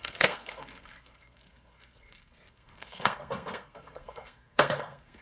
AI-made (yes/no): yes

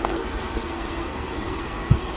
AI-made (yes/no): yes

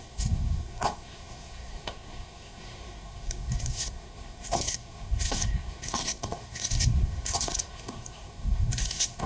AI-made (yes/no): yes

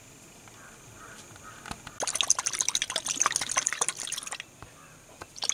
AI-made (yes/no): no